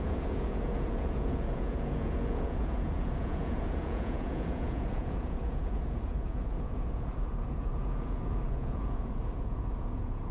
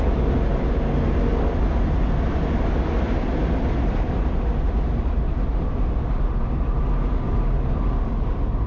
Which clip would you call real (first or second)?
second